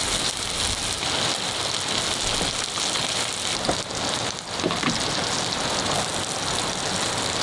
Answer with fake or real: real